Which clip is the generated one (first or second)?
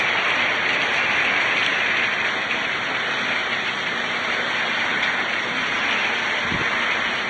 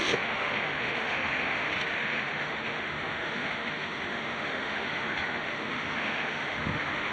second